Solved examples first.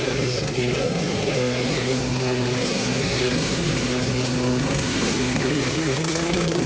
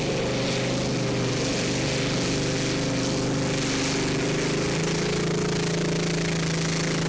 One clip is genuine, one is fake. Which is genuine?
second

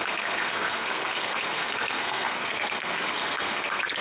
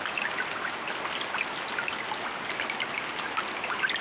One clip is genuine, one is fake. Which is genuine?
second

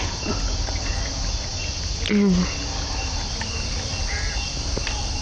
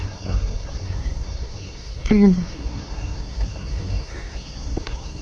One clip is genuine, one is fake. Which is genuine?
first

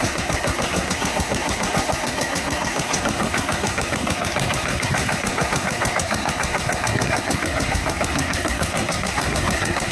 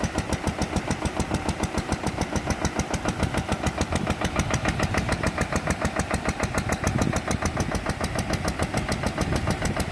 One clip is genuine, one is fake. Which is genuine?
second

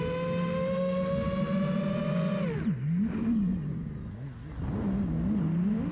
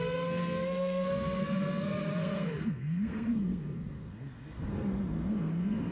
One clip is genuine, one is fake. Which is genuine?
first